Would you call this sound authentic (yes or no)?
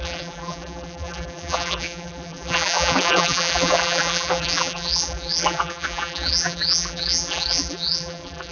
no